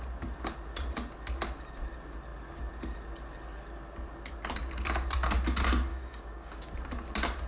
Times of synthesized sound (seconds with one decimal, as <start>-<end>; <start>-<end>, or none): 5.9-6.7